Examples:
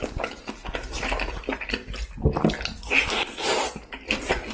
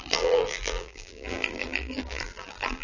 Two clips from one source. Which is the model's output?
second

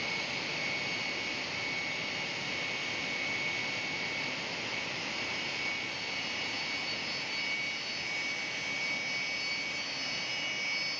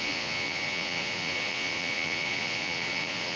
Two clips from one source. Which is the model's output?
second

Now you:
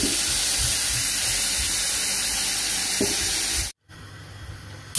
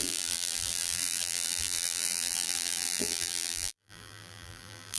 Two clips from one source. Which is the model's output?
second